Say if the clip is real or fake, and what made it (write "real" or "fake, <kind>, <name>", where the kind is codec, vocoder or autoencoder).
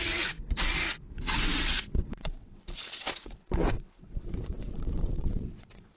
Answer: fake, vocoder, WaveNeXt